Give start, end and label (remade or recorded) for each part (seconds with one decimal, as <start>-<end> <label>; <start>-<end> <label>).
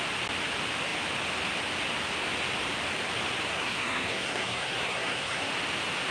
0.0-3.5 recorded; 3.5-5.5 remade; 5.5-6.1 recorded